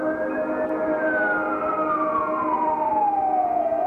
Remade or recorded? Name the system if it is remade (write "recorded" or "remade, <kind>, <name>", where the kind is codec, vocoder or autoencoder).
recorded